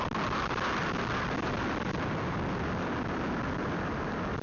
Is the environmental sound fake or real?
real